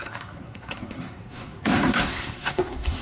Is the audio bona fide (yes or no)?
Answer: no